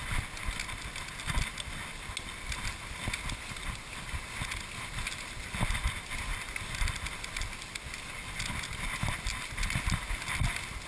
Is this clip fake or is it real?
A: real